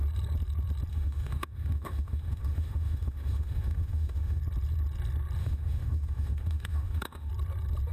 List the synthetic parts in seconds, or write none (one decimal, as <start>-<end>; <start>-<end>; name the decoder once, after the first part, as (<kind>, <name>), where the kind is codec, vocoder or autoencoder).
0.9-4.4 (autoencoder, DAC-VAE); 5.4-7.3